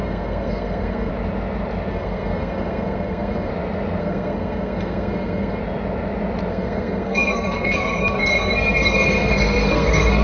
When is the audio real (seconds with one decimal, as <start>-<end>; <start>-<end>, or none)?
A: 1.1-1.9; 3.5-4.0; 5.6-6.5